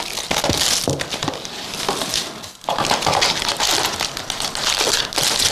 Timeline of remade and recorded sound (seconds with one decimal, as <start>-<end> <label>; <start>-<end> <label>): 0.0-5.5 recorded